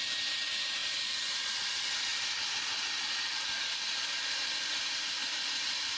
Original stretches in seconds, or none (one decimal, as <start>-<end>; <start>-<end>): 0.0-6.0